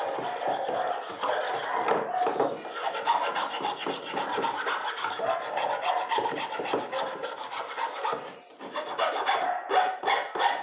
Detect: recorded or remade recorded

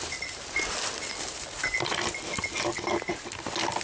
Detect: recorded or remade recorded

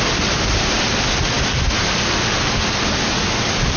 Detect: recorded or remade recorded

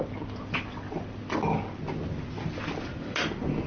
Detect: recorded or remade recorded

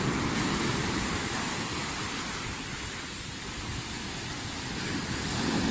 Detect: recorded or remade remade